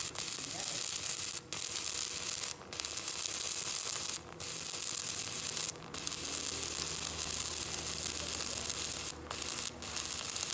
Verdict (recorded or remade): recorded